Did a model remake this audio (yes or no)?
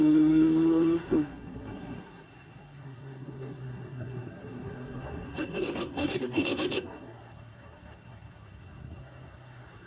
yes